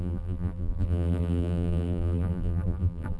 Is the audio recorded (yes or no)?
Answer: no